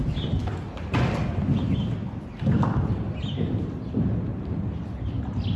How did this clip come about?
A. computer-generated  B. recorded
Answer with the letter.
B